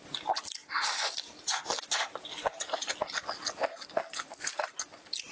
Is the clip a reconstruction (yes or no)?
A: no